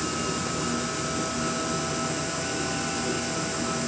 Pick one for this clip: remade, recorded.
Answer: recorded